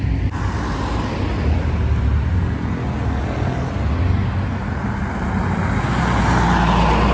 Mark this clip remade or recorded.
recorded